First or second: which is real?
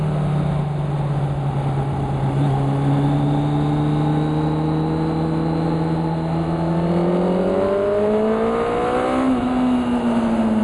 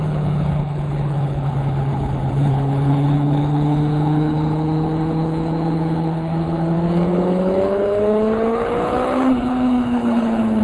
first